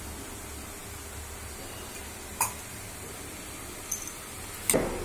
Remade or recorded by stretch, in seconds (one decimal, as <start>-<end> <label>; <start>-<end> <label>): 0.0-5.0 recorded